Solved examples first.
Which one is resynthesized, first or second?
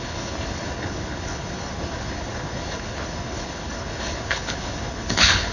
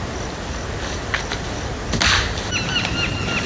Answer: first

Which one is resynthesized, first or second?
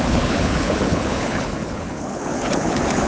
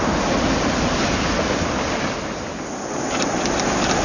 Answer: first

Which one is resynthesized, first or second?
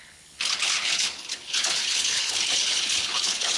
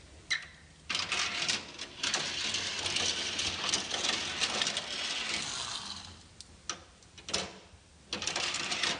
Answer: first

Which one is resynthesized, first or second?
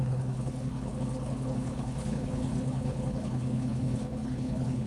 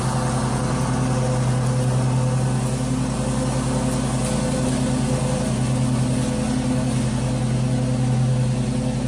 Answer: first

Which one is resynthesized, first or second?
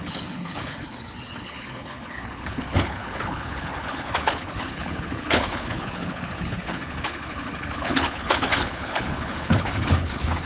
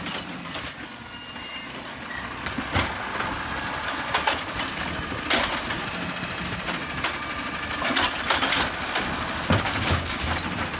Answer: first